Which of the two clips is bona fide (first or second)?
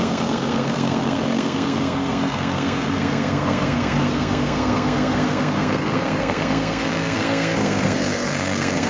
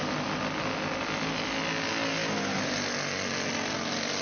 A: second